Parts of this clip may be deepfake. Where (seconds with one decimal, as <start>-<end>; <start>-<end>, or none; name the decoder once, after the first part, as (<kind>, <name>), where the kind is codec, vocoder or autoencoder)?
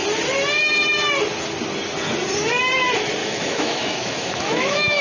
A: 3.2-5.0 (autoencoder, DAC-VAE)